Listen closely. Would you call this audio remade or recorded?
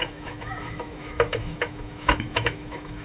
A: remade